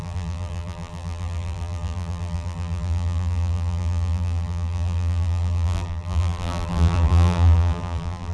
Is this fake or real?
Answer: fake